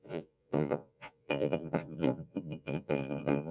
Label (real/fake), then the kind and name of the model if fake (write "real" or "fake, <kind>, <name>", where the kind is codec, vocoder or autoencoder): fake, vocoder, Vocos